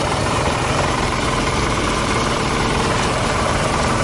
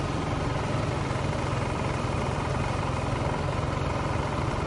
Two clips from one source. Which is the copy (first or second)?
first